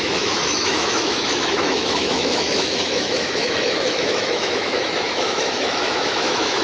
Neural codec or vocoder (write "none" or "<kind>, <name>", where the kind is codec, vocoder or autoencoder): autoencoder, DAC-VAE